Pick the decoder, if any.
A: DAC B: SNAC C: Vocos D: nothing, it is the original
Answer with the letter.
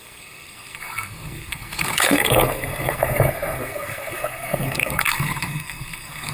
B